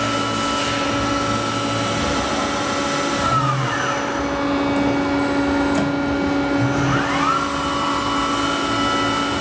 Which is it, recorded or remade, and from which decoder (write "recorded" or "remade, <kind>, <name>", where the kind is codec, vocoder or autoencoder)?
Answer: recorded